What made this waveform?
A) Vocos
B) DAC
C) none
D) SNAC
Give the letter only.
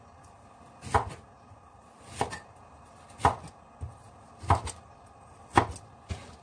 C